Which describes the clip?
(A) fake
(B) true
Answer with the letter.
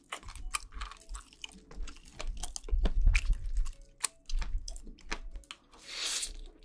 B